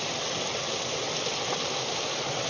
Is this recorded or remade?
recorded